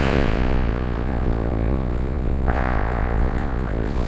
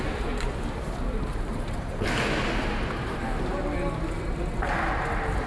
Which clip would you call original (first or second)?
second